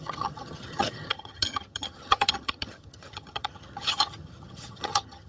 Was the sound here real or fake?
fake